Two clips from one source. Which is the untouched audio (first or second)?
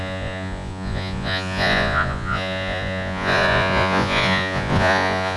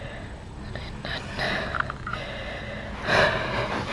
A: second